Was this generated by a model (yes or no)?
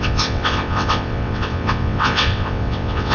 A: yes